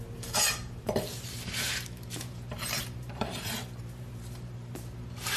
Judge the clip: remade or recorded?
remade